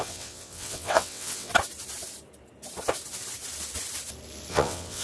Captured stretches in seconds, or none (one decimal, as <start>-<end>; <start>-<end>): 1.5-4.5